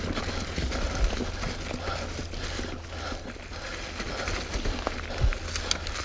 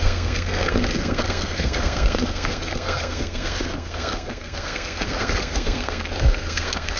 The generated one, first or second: second